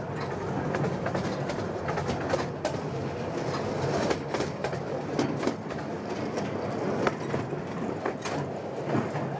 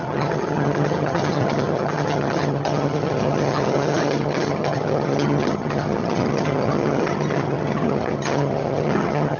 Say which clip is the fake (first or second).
second